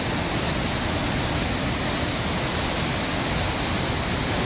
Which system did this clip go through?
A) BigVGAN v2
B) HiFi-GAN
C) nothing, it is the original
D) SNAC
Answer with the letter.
C